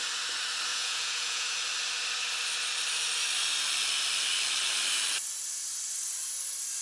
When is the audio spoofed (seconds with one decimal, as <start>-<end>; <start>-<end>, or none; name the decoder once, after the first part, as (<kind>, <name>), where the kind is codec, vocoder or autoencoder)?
0.7-1.5 (vocoder, Vocos)

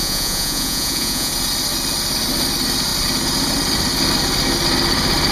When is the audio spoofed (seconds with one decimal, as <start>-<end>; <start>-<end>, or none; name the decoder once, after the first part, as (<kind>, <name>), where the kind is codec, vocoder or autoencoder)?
0.0-1.3 (vocoder, Vocos)

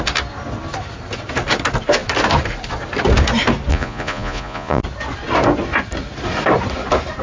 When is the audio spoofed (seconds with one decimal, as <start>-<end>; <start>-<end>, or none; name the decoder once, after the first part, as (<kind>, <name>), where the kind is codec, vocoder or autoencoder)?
3.7-4.8 (vocoder, Vocos)